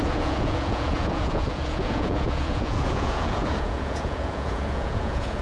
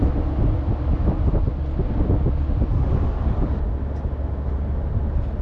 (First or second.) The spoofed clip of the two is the first